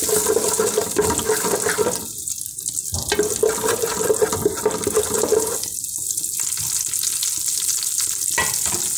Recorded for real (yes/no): yes